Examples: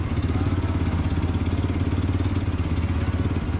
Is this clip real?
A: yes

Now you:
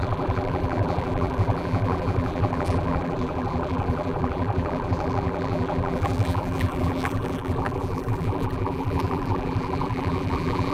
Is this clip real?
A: no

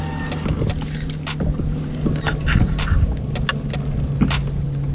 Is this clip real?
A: yes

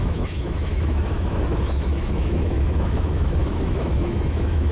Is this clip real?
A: no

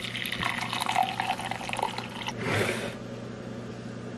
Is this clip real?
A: yes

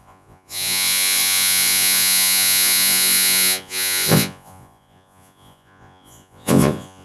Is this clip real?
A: no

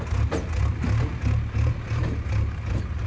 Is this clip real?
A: yes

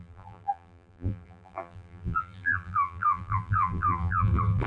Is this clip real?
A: no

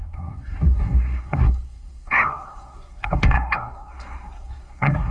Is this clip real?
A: no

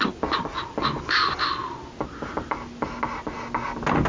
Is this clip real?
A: yes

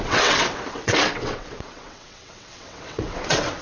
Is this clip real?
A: no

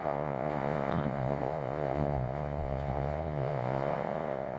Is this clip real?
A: no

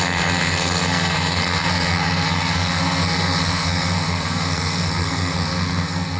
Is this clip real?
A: no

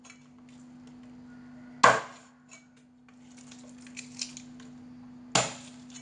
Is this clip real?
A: yes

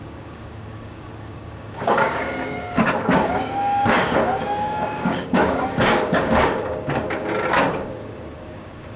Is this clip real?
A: no